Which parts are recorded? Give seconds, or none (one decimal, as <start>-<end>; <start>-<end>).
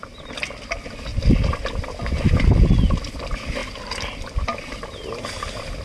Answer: 0.0-5.8